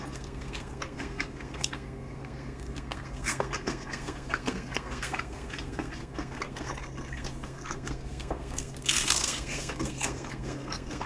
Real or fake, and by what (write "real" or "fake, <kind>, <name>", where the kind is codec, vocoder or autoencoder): fake, codec, SNAC